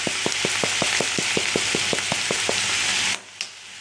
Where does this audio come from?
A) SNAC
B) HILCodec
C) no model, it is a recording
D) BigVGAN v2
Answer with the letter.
C